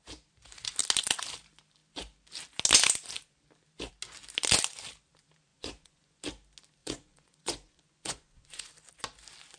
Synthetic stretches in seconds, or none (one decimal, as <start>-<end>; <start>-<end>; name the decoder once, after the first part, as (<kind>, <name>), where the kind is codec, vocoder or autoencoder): 5.5-6.2 (vocoder, Vocos); 6.8-8.7